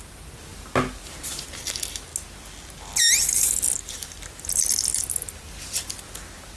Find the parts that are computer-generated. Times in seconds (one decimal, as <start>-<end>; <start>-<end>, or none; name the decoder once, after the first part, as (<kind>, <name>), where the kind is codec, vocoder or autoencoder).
0.0-2.1 (vocoder, BigVGAN v2); 3.8-6.6